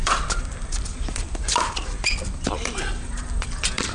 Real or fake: fake